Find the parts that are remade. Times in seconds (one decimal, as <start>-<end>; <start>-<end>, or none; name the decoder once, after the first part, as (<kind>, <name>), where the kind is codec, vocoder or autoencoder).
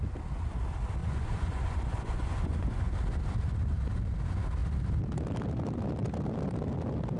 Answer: 1.0-2.9 (vocoder, Vocos)